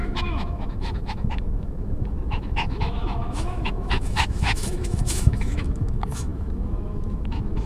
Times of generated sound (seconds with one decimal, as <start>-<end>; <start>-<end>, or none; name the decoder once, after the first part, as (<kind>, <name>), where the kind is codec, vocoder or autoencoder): 0.0-7.7 (autoencoder, DAC-VAE)